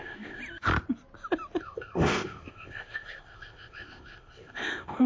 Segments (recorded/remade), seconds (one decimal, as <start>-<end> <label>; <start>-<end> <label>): 0.0-0.4 remade; 0.4-1.6 recorded; 1.6-5.1 remade